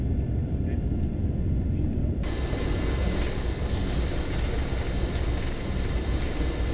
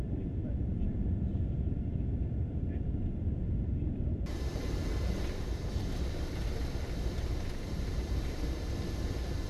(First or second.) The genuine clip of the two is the first